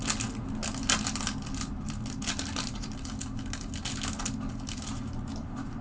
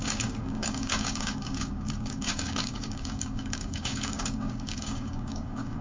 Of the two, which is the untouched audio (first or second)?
first